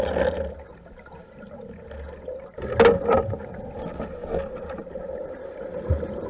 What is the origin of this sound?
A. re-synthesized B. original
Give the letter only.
B